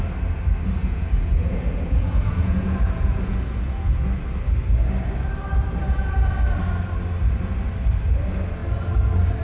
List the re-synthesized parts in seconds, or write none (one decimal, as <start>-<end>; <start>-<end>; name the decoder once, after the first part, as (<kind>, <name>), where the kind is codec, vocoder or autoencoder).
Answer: 0.8-4.2 (vocoder, Vocos); 5.8-6.3

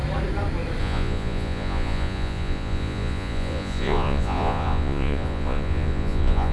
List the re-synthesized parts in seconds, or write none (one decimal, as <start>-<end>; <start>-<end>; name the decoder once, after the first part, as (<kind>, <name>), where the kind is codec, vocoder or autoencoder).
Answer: 0.8-6.5 (vocoder, Vocos)

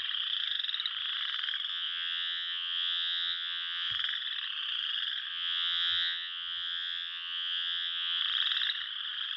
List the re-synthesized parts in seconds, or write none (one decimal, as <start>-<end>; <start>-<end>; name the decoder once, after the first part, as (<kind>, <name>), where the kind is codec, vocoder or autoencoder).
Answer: 1.7-3.9 (vocoder, Vocos); 5.3-8.2

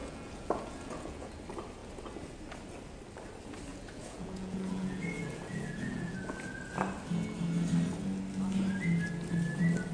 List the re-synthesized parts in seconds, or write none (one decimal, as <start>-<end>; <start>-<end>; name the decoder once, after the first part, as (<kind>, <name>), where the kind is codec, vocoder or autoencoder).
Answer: 0.0-1.3 (vocoder, Vocos); 3.7-6.6

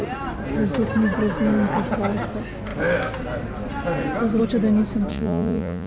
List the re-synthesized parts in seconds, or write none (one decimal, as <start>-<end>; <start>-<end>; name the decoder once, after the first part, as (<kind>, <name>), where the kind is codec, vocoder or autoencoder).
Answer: 5.1-5.9 (vocoder, Vocos)

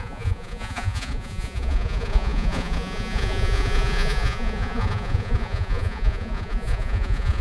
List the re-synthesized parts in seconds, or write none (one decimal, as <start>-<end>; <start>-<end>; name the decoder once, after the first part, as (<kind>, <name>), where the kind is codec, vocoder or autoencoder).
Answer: 0.0-7.4 (vocoder, Vocos)

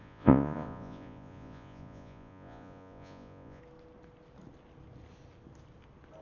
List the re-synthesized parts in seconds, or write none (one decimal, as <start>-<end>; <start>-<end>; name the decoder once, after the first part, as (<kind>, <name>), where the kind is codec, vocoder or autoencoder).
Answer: 0.0-3.6 (vocoder, Vocos)

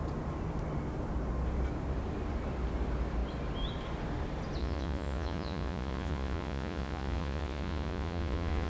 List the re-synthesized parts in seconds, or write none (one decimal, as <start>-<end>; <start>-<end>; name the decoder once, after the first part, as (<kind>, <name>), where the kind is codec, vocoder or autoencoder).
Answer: 4.6-8.7 (vocoder, Vocos)